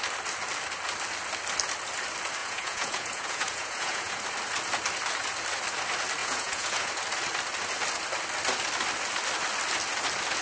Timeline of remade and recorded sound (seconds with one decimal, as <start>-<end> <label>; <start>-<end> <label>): 0.0-2.4 recorded; 2.4-4.2 remade; 4.2-6.2 recorded; 6.2-6.9 remade; 6.9-10.4 recorded